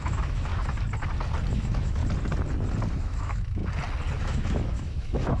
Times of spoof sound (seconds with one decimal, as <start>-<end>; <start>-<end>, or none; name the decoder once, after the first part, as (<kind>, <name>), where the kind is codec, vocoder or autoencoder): 0.0-0.5 (autoencoder, DAC-VAE); 1.5-2.0; 2.9-3.6; 4.2-5.4